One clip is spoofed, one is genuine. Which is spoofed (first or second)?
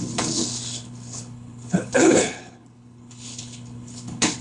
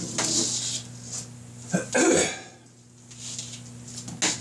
first